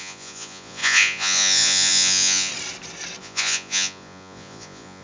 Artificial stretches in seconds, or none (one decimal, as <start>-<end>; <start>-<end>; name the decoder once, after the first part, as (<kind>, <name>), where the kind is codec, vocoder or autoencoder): 0.0-2.5 (vocoder, Vocos); 3.2-5.0